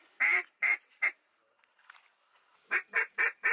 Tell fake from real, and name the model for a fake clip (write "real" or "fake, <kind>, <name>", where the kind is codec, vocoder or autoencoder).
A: fake, vocoder, BigVGAN v2